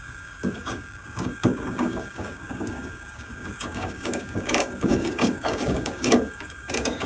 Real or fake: fake